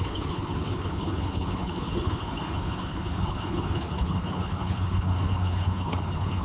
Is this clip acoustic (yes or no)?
no